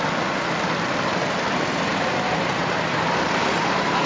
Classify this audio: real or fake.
real